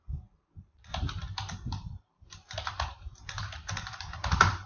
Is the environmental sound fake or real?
fake